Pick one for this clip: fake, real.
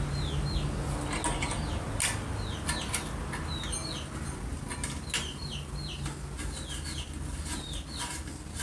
real